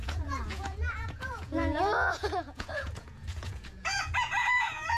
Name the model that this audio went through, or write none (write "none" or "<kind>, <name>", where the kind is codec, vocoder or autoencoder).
vocoder, Vocos